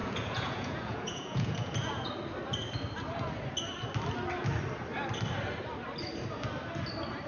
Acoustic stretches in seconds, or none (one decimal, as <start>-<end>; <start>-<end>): 2.1-7.3